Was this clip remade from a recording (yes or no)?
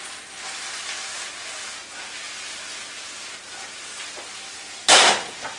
no